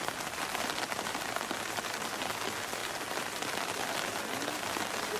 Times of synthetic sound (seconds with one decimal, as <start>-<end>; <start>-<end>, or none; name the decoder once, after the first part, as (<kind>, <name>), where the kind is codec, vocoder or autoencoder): 2.8-4.6 (vocoder, BigVGAN v2)